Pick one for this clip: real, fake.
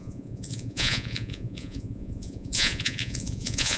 fake